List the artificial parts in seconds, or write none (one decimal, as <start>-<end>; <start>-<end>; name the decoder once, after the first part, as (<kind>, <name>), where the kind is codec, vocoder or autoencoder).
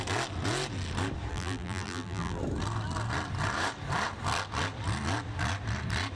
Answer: 1.3-2.4 (vocoder, BigVGAN v2)